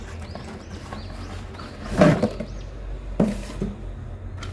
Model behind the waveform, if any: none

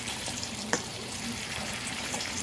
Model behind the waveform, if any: vocoder, BigVGAN v2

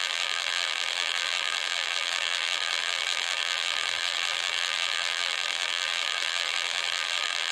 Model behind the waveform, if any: vocoder, BigVGAN v2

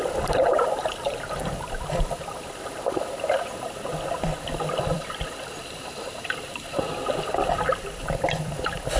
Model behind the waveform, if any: vocoder, BigVGAN v2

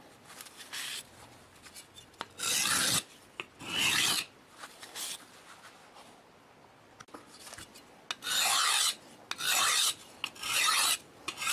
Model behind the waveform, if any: none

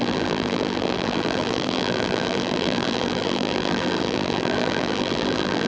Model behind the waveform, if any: vocoder, BigVGAN v2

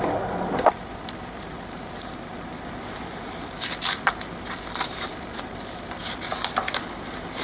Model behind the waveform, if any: vocoder, BigVGAN v2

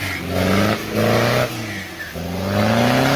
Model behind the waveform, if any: none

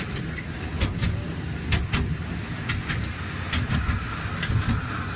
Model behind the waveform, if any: none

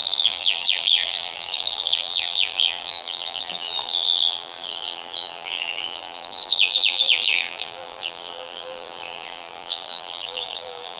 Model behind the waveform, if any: vocoder, BigVGAN v2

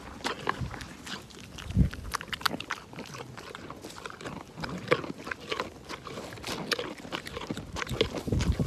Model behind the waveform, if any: none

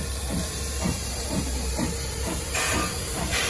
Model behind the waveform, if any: vocoder, BigVGAN v2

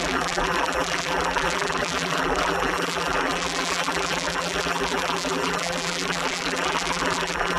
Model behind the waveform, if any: vocoder, BigVGAN v2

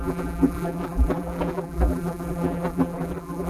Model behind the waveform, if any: vocoder, BigVGAN v2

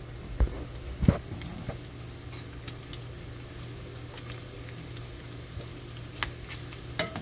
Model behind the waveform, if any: none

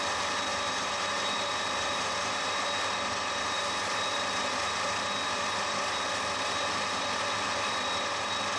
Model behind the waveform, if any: none